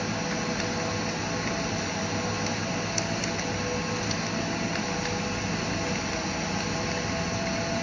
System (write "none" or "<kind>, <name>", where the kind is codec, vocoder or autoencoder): none